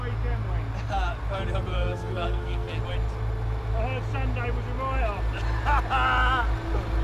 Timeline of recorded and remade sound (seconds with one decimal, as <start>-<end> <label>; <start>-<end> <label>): 0.0-1.7 recorded; 1.7-2.8 remade; 2.8-7.0 recorded